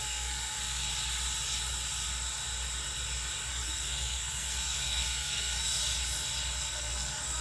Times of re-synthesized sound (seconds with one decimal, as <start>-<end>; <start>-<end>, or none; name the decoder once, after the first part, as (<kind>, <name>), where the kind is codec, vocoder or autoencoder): 0.0-0.9 (codec, SNAC); 3.5-5.8; 6.6-7.4